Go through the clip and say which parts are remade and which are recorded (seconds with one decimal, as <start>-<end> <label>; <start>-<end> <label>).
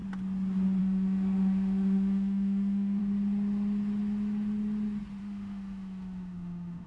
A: 0.0-0.8 recorded; 0.8-3.0 remade; 3.0-5.2 recorded; 5.2-6.9 remade